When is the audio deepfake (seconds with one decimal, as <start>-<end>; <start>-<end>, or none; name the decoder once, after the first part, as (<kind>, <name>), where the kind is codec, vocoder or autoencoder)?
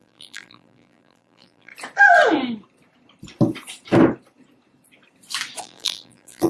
0.0-1.7 (vocoder, BigVGAN v2); 5.6-6.5